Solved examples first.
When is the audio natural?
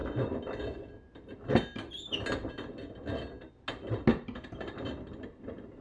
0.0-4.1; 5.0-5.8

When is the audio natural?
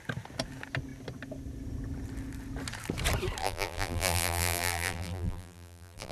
0.0-3.4